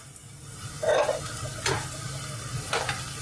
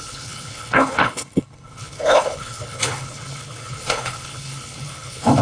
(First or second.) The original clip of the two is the first